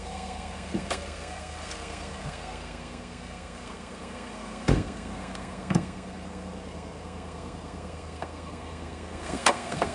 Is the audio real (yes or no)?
no